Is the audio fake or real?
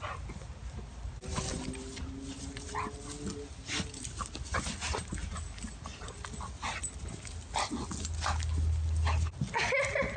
real